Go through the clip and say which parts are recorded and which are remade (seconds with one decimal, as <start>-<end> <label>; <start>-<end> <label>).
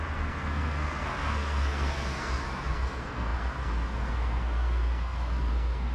0.0-5.9 remade